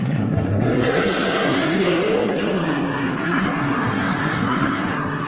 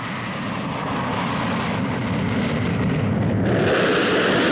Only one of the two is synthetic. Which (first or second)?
first